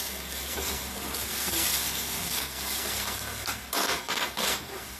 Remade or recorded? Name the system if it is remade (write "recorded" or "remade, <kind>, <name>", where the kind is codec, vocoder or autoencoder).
remade, codec, SNAC